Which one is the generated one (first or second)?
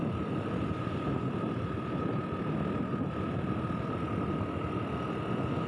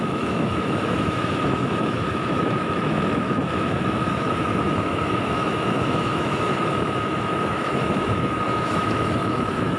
second